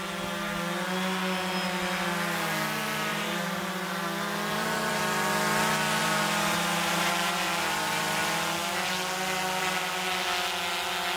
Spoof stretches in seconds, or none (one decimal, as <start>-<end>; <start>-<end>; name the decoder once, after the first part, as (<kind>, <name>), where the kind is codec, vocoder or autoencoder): 3.1-3.9 (vocoder, BigVGAN v2); 4.5-5.0; 6.0-7.1